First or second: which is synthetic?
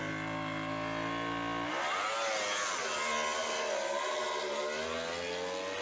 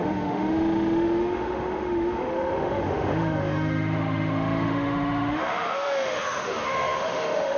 second